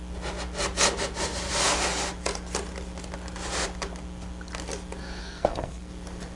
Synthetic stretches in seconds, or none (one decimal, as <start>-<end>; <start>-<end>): 5.2-5.9